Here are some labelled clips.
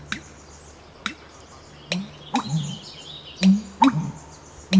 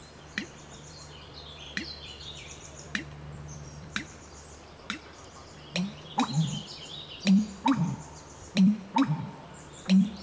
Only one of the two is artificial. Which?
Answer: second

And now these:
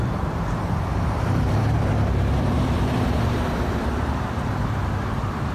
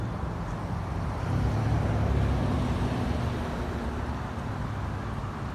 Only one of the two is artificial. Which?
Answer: first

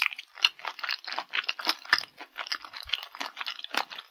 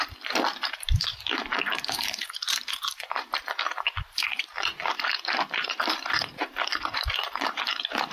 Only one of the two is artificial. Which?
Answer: second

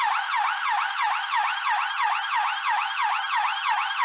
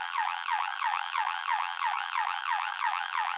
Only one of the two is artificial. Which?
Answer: second